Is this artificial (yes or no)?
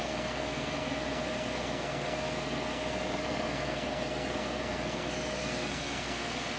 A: yes